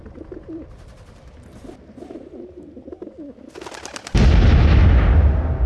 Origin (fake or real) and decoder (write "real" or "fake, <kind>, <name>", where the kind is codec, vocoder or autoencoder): real